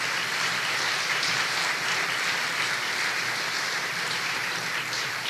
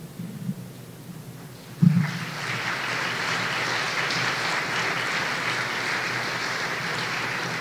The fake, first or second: first